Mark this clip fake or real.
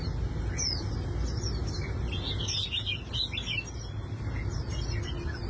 real